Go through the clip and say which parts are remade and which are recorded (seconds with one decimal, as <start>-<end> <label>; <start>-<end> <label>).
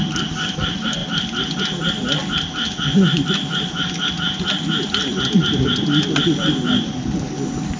0.0-7.8 recorded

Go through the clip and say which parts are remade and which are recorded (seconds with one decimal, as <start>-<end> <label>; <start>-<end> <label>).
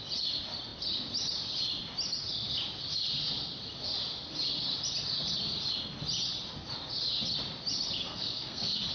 0.0-8.0 recorded; 8.0-8.9 remade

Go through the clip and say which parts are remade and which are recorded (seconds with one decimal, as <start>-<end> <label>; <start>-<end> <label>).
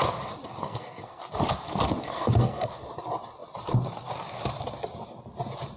0.0-0.6 recorded; 0.6-1.2 remade; 1.2-2.0 recorded; 2.0-2.7 remade; 2.7-5.8 recorded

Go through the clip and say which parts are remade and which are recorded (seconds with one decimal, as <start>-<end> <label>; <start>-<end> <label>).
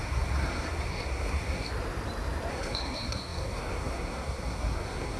0.0-1.7 remade; 1.7-2.5 recorded; 2.5-5.2 remade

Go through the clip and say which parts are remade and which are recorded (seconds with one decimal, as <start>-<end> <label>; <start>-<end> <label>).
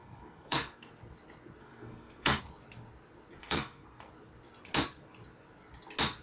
0.0-0.9 remade; 0.9-1.6 recorded; 1.6-2.4 remade; 2.4-3.4 recorded; 3.4-4.1 remade; 4.1-6.2 recorded